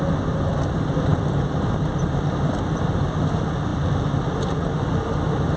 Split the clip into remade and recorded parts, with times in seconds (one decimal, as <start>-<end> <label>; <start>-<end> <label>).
0.0-5.6 recorded